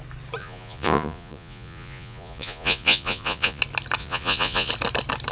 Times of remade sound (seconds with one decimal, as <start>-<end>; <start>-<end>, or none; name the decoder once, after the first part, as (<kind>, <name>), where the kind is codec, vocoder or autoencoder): 0.4-3.6 (vocoder, Vocos); 4.0-4.7